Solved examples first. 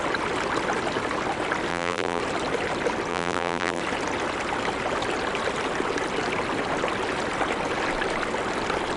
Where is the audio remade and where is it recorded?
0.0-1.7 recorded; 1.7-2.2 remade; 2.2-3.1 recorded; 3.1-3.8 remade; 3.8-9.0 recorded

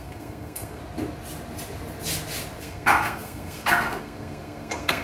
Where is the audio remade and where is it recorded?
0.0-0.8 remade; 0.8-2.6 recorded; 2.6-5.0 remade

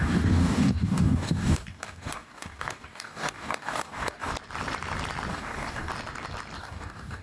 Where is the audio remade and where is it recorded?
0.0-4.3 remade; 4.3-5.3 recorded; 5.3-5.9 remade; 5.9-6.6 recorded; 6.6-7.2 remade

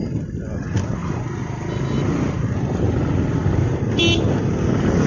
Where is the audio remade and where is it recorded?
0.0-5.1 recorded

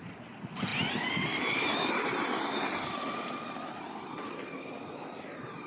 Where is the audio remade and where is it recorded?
0.0-5.7 recorded

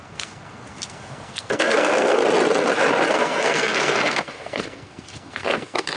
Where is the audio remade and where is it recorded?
0.0-2.2 remade; 2.2-3.1 recorded; 3.1-6.0 remade